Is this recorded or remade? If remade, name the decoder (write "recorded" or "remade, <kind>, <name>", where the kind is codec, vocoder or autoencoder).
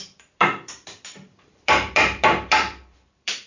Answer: remade, vocoder, BigVGAN v2